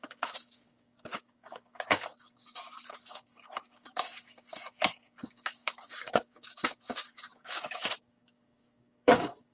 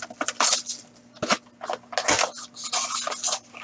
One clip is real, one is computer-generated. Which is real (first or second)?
second